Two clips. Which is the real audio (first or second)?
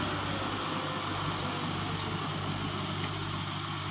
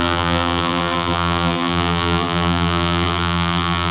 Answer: first